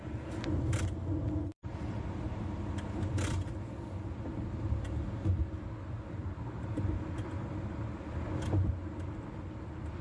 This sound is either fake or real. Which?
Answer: real